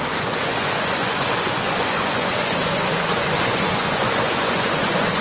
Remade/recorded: remade